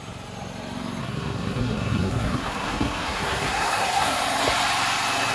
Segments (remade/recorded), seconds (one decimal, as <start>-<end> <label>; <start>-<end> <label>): 0.0-1.0 recorded; 1.0-4.2 remade; 4.2-5.3 recorded

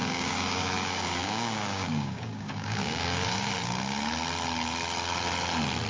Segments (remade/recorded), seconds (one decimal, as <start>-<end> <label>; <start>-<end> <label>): 0.0-3.5 remade; 3.5-5.9 recorded

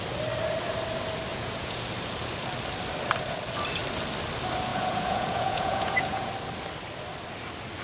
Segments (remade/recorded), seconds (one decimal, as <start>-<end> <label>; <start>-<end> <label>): 0.0-1.3 recorded; 1.3-1.8 remade; 1.8-4.7 recorded; 4.7-6.3 remade; 6.3-7.8 recorded

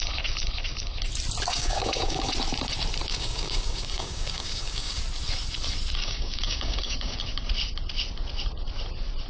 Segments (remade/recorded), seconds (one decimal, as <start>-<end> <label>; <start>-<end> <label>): 0.0-1.5 recorded; 1.5-2.3 remade; 2.3-3.1 recorded; 3.1-5.0 remade; 5.0-6.0 recorded; 6.0-7.2 remade; 7.2-9.3 recorded

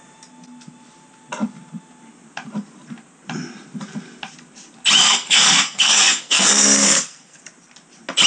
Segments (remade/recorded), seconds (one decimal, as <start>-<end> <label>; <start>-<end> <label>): 0.0-5.0 recorded; 5.0-7.4 remade; 7.4-8.3 recorded

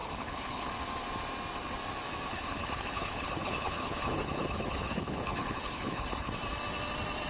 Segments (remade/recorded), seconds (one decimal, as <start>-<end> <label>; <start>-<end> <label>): 0.0-0.7 remade; 0.7-2.3 recorded; 2.3-6.3 remade; 6.3-7.3 recorded

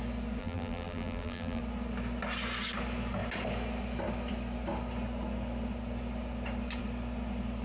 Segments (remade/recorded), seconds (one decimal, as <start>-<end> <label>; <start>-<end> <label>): 0.0-0.4 recorded; 0.4-1.6 remade; 1.6-7.6 recorded